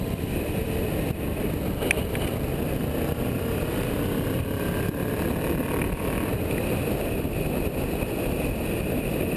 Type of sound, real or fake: fake